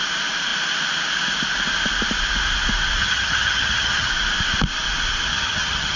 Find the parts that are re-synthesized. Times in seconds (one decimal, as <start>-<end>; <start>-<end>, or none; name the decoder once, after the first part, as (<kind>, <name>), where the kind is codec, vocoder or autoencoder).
3.0-4.1 (vocoder, HiFi-GAN); 5.3-6.0